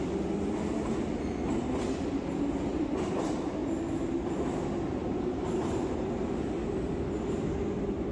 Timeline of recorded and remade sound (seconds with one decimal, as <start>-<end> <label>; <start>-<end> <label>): 0.0-5.0 recorded; 5.0-6.2 remade; 6.2-8.1 recorded